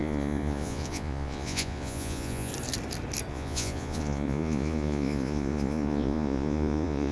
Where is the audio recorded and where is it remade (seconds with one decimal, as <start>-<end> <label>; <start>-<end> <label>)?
0.0-2.5 remade; 2.5-3.3 recorded; 3.3-7.1 remade